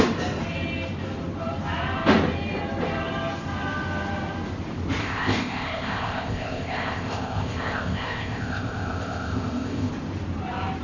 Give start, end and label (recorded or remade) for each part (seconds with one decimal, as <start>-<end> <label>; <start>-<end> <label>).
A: 0.0-5.0 recorded; 5.0-9.9 remade; 9.9-10.8 recorded